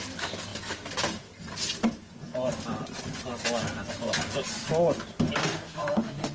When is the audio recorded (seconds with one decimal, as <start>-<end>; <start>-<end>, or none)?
0.0-5.4